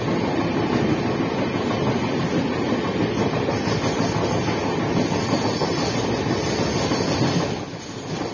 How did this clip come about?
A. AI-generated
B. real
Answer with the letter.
B